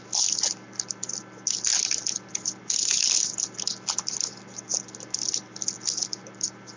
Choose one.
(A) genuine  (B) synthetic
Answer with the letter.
A